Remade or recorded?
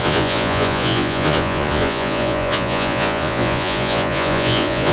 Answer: remade